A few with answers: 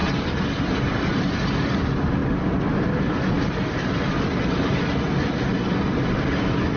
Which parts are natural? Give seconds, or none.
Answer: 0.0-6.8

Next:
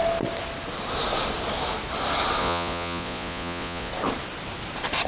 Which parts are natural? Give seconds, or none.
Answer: 0.0-2.4; 3.9-5.1

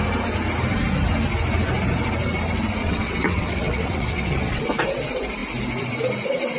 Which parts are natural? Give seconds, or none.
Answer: 0.0-2.8; 4.6-6.6

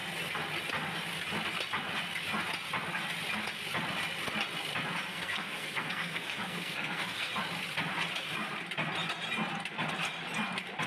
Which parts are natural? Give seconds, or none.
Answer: 0.0-5.1; 7.3-10.9

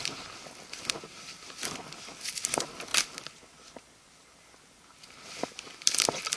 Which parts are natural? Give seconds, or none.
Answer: 0.0-6.4

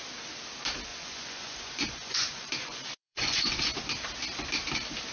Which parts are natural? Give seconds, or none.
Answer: 0.0-0.9; 3.7-5.1

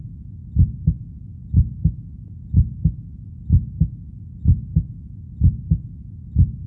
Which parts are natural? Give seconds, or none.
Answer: 0.0-6.7